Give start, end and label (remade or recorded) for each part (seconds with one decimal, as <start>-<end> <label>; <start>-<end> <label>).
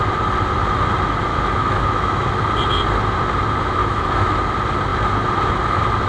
0.0-1.3 recorded; 1.3-2.3 remade; 2.3-3.8 recorded; 3.8-4.4 remade; 4.4-6.1 recorded